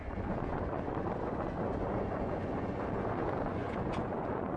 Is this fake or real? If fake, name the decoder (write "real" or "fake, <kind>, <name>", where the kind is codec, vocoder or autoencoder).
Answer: fake, vocoder, Vocos